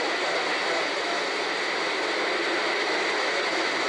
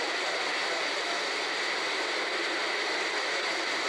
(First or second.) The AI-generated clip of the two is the second